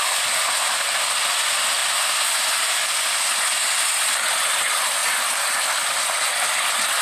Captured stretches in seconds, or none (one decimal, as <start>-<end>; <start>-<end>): 0.0-7.0